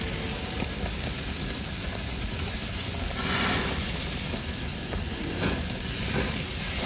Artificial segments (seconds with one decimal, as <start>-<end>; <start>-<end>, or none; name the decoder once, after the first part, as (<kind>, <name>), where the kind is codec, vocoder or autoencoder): 1.8-3.9 (vocoder, Vocos); 4.8-6.1